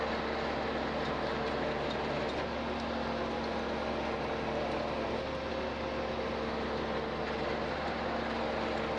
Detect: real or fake real